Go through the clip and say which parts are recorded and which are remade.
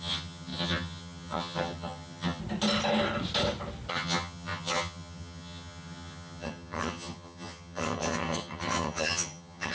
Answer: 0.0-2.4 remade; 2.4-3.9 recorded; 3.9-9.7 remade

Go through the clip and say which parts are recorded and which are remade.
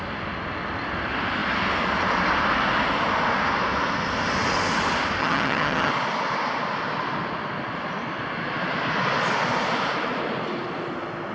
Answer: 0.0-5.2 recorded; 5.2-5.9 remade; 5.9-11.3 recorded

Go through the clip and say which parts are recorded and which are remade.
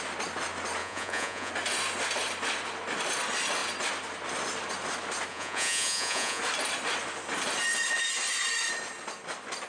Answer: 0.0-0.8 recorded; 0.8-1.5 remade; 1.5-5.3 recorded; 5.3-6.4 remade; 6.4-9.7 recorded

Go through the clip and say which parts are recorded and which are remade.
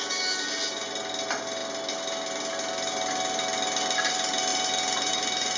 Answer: 0.0-5.6 recorded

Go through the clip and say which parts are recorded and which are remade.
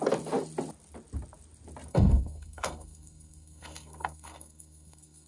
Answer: 0.0-1.9 recorded; 1.9-5.3 remade